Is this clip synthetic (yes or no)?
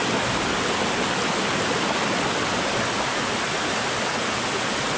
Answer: no